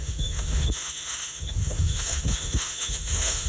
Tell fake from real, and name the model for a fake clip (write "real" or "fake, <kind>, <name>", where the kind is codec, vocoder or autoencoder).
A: fake, autoencoder, DAC-VAE